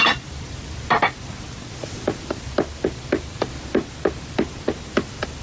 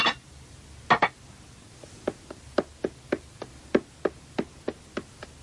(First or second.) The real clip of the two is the second